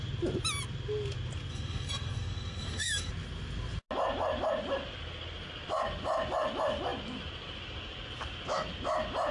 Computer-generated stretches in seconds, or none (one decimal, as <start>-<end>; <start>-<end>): 1.5-3.1